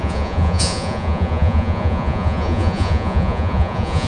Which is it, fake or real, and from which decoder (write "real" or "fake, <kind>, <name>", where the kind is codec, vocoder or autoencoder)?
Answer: fake, vocoder, Vocos